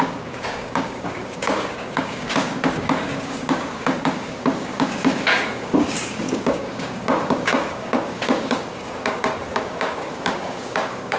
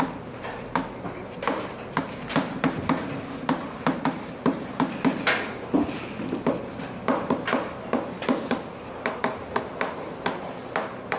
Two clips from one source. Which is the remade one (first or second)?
first